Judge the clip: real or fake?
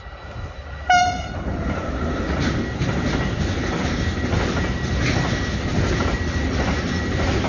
real